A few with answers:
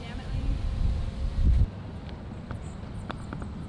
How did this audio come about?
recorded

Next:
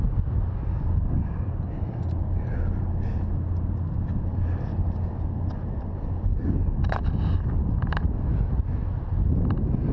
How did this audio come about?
recorded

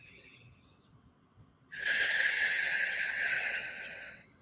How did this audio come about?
remade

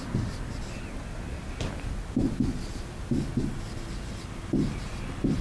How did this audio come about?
recorded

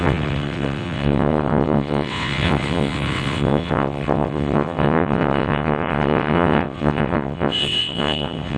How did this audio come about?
remade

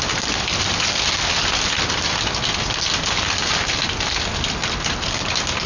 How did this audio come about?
recorded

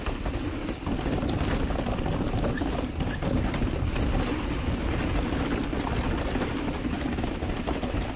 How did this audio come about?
recorded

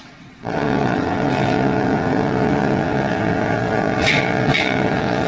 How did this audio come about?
remade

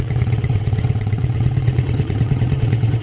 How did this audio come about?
remade